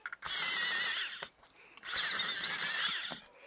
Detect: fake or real real